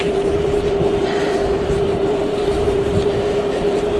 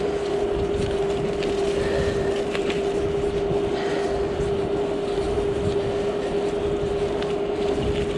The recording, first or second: second